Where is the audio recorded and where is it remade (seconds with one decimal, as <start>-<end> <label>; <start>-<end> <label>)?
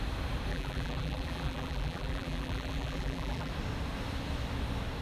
0.0-0.5 recorded; 0.5-3.5 remade; 3.5-5.0 recorded